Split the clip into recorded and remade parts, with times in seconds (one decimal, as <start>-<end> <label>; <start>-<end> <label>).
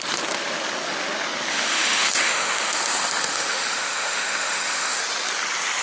0.0-1.5 recorded; 1.5-5.0 remade; 5.0-5.8 recorded